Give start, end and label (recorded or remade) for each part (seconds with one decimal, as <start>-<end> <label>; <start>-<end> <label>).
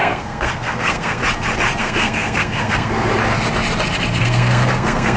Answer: 0.0-1.2 remade; 1.2-1.8 recorded; 1.8-3.1 remade; 3.1-4.2 recorded; 4.2-5.2 remade